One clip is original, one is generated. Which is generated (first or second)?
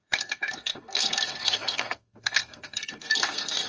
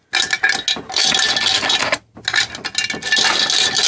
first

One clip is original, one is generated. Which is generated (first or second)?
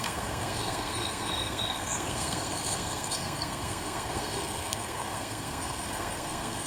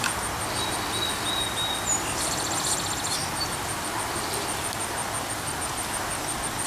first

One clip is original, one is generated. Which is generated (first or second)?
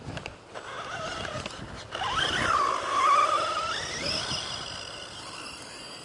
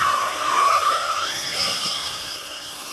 second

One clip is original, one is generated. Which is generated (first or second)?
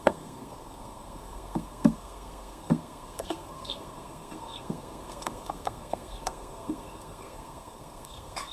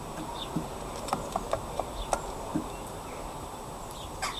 first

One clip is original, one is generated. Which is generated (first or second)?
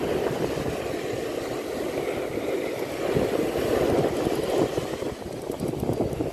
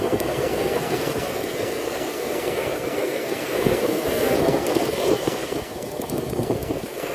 second